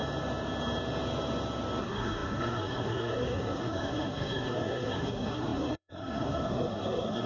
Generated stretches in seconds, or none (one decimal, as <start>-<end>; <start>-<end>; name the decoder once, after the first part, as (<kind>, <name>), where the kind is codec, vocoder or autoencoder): 1.8-7.3 (codec, SNAC)